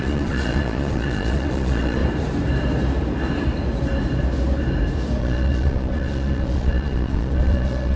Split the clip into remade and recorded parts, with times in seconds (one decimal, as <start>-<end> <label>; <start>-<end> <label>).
0.0-2.0 remade; 2.0-5.2 recorded; 5.2-8.0 remade